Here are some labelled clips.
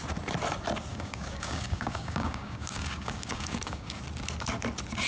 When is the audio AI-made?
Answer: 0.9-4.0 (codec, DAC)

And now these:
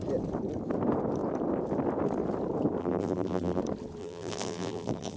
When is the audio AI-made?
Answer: 2.8-3.6 (vocoder, BigVGAN v2); 4.0-5.2

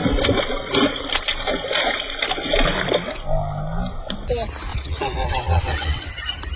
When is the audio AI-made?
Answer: 4.7-6.1 (vocoder, WaveNeXt)

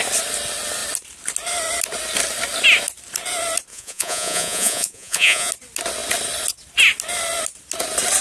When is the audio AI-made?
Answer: 3.7-5.5 (vocoder, Vocos)

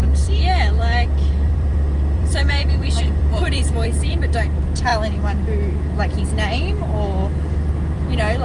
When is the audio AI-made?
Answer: 0.0-4.2 (vocoder, BigVGAN v2)

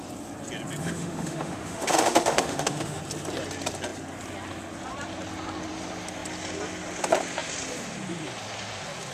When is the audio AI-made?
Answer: 0.8-3.0 (autoencoder, DAC-VAE)

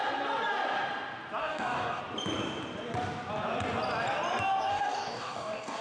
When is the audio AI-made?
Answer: 1.4-2.0 (codec, DAC); 4.7-5.8